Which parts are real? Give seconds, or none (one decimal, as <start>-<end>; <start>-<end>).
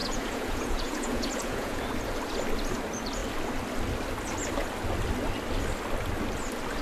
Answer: 1.8-6.8